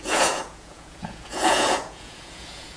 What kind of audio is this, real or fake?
fake